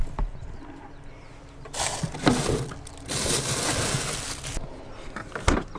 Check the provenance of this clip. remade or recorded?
recorded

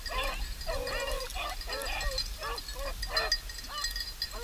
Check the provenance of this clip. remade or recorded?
recorded